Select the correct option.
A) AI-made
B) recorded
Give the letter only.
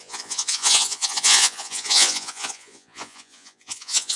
A